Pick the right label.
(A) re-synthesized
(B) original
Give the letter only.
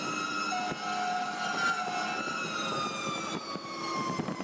B